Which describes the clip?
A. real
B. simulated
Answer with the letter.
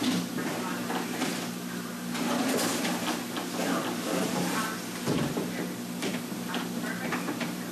A